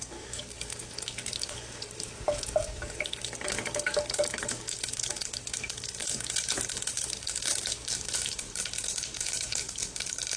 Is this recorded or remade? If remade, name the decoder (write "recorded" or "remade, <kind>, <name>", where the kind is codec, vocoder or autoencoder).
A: remade, codec, DAC